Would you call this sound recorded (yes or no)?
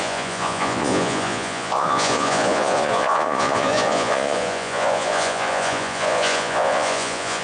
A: no